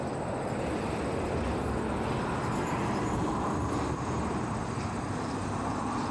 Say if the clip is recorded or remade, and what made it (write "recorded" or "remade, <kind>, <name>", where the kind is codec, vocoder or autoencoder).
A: recorded